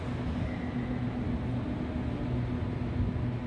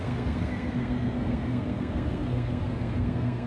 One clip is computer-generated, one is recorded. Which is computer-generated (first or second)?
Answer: second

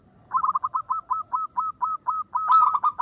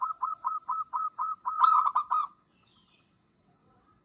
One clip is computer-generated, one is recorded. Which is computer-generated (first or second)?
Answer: second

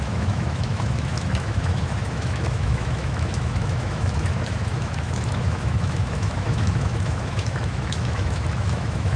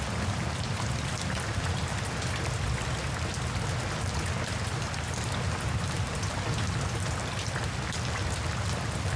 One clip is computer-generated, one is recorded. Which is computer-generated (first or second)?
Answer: first